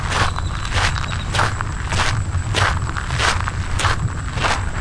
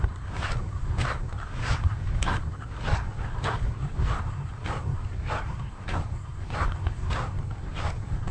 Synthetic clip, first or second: second